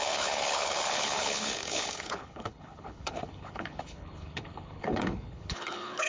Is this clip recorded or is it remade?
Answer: remade